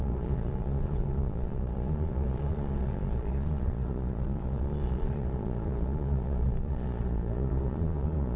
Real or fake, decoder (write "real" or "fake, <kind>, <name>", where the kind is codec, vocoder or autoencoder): fake, vocoder, Vocos